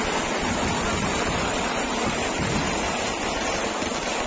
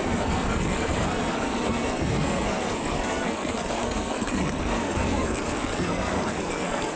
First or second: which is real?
first